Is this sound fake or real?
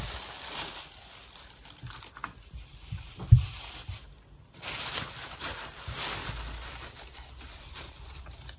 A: real